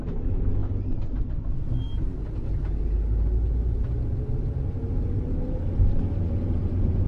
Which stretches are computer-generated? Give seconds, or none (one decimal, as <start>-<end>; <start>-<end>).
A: none